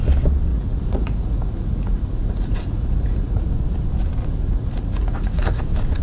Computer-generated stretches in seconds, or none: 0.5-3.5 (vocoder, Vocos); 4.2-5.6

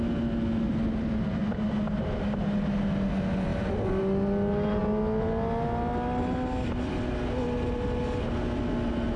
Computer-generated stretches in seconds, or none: 0.7-1.5 (vocoder, BigVGAN v2); 3.5-4.0